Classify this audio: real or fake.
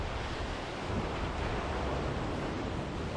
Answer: real